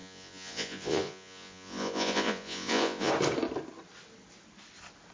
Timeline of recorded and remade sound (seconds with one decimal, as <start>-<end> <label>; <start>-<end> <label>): 0.0-3.1 remade; 3.1-5.1 recorded